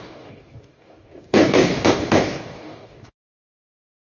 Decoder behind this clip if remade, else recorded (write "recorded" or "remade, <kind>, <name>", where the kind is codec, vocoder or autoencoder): remade, codec, DAC